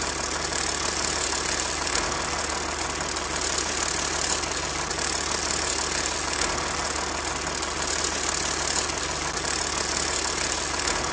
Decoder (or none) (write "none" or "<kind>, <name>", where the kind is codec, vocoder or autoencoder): none